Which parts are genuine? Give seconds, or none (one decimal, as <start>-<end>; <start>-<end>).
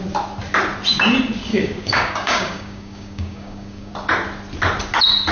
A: 0.0-1.5; 3.9-5.3